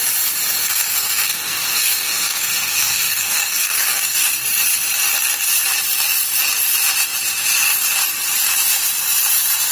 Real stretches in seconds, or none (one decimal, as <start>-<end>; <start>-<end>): 0.0-0.6; 4.3-9.7